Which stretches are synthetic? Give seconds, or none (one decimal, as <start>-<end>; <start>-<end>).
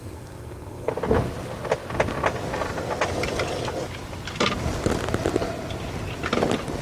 0.0-0.9